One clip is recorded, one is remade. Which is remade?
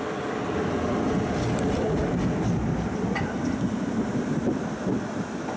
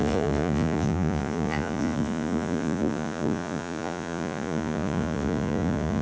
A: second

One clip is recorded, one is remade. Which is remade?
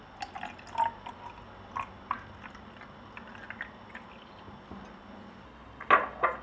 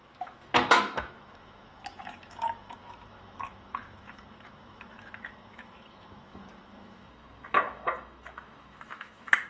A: second